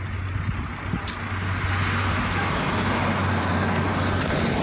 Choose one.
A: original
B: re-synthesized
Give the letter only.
A